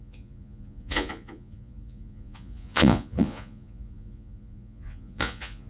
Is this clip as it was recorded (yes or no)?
no